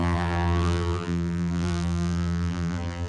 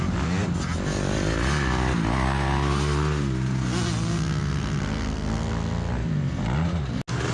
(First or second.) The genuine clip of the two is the second